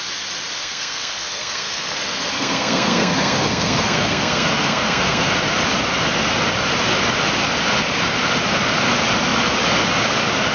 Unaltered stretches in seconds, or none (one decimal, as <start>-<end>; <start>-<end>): 0.0-0.6; 5.3-10.5